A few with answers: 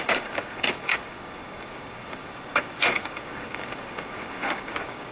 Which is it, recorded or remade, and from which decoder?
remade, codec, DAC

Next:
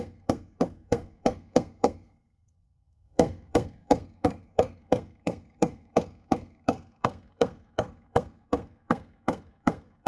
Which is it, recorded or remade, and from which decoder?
remade, codec, SNAC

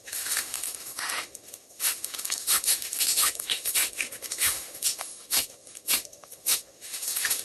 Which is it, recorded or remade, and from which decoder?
remade, autoencoder, DAC-VAE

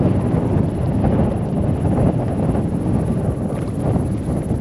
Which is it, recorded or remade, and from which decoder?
recorded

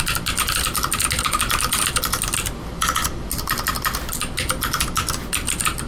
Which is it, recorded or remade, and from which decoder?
recorded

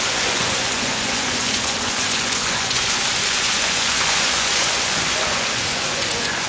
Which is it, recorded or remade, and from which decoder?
remade, vocoder, Vocos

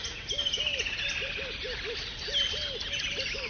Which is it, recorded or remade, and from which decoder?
recorded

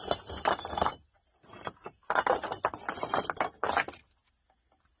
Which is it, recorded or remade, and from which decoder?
recorded